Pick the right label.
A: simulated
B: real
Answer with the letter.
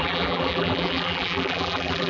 A